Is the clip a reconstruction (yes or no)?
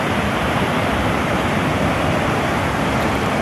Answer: no